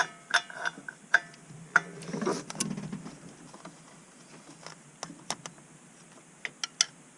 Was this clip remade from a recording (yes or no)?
no